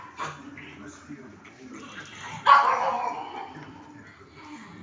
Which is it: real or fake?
real